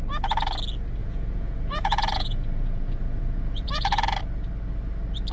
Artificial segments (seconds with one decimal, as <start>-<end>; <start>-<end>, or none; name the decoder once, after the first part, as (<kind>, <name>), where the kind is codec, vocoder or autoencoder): 1.0-4.2 (vocoder, Vocos)